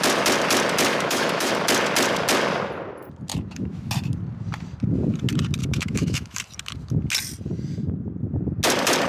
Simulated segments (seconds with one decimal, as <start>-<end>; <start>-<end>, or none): 0.9-1.5; 3.3-3.9; 5.6-6.4